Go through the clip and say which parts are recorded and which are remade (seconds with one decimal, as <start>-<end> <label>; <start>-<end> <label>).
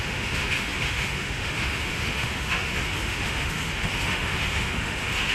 0.0-5.3 remade